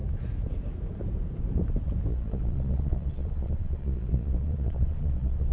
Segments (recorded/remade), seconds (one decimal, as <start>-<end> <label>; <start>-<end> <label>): 0.0-2.1 recorded; 2.1-5.5 remade